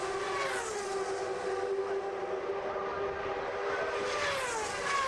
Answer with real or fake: real